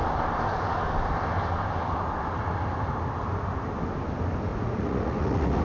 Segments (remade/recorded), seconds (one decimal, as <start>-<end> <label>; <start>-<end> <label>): 0.0-4.5 recorded; 4.5-5.6 remade